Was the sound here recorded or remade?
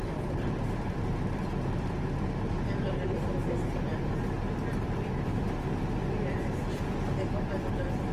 remade